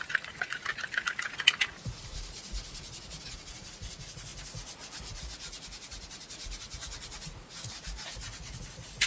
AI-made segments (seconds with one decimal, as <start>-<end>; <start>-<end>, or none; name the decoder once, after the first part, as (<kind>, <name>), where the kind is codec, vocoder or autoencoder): 0.0-4.3 (vocoder, Vocos); 5.0-9.1